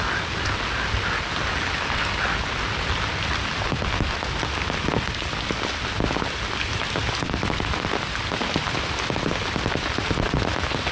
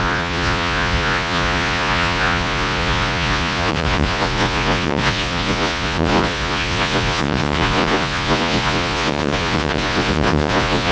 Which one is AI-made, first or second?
second